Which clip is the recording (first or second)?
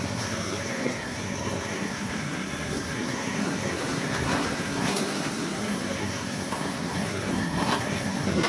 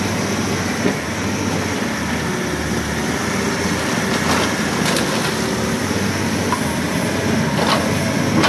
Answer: second